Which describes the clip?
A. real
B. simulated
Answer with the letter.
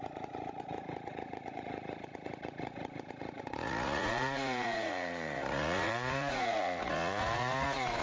B